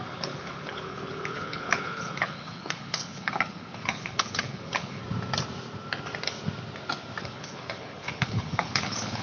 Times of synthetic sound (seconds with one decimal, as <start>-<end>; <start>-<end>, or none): 0.0-5.0; 7.2-9.2